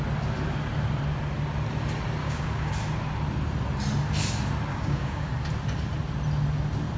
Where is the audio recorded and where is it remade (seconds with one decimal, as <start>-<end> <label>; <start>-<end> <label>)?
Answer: 0.0-2.2 recorded; 2.2-2.7 remade; 2.7-4.7 recorded; 4.7-5.3 remade; 5.3-7.0 recorded

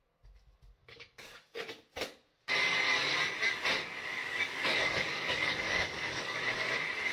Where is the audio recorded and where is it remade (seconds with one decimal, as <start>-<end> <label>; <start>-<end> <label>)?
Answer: 0.0-0.8 recorded; 0.8-1.6 remade; 1.6-4.2 recorded; 4.2-6.4 remade; 6.4-7.1 recorded

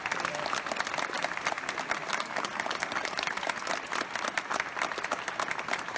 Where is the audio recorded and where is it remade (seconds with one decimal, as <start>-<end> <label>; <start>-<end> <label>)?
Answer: 0.0-2.1 recorded; 2.1-3.7 remade; 3.7-6.0 recorded

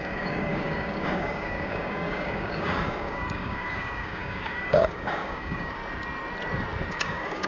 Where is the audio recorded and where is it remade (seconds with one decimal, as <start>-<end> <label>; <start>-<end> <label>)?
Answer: 0.0-5.8 remade; 5.8-6.9 recorded; 6.9-7.5 remade

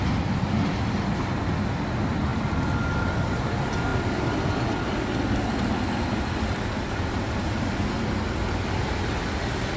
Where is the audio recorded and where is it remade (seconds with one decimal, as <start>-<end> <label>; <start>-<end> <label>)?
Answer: 0.0-9.8 recorded

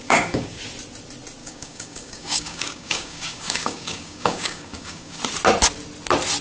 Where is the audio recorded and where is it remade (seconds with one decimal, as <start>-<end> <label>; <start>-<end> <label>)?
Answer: 0.0-0.6 remade; 0.6-1.4 recorded; 1.4-5.2 remade; 5.2-6.4 recorded